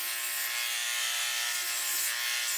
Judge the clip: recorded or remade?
recorded